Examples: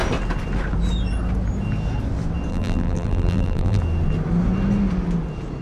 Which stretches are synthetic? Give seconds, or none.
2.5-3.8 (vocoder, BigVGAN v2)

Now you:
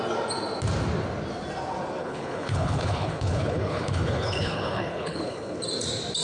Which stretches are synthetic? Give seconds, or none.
2.0-5.6 (codec, HILCodec)

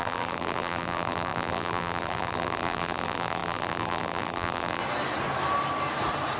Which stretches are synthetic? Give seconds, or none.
0.0-4.8 (vocoder, BigVGAN v2)

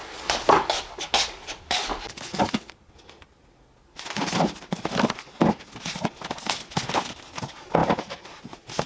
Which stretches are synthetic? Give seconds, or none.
0.0-2.7 (codec, DAC)

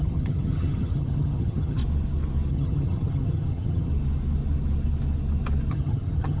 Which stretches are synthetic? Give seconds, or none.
0.0-1.8 (vocoder, HiFi-GAN); 2.5-3.9; 5.7-6.4

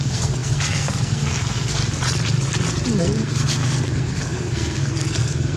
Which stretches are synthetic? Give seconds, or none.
0.0-1.8 (codec, SNAC); 3.0-5.6

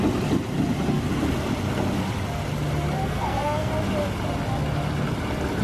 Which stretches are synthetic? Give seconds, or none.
3.0-3.7 (codec, SNAC)